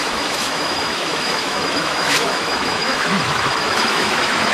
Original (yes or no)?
no